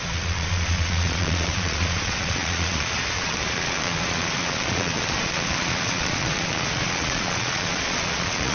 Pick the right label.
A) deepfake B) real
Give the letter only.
A